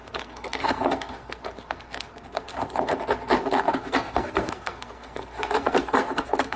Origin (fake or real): fake